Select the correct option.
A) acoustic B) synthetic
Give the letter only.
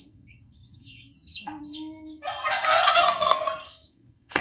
B